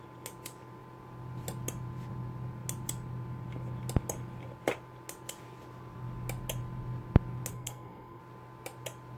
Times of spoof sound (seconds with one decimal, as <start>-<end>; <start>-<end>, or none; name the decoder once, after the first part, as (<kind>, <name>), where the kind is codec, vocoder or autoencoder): 7.5-8.2 (codec, SNAC)